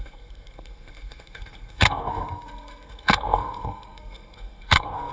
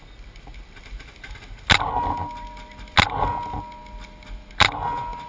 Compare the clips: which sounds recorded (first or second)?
second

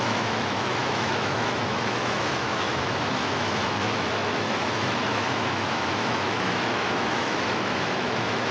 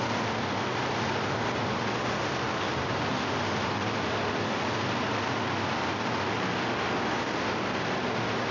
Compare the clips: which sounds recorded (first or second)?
second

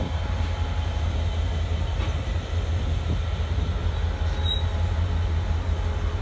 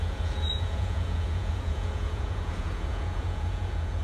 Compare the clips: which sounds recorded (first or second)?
first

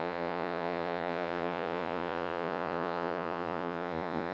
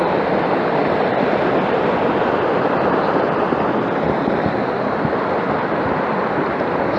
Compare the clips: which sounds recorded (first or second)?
second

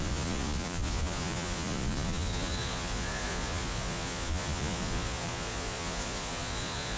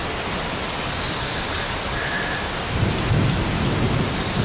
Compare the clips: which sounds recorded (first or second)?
second